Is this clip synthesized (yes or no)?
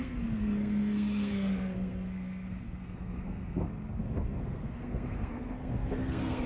yes